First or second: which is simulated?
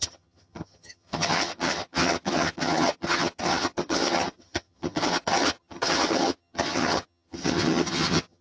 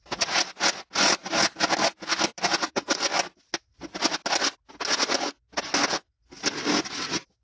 first